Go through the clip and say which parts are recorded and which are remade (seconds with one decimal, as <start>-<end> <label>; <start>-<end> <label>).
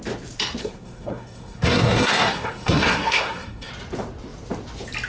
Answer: 0.0-0.6 recorded; 0.6-3.7 remade; 3.7-5.1 recorded